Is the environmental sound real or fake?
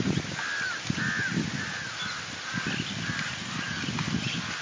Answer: real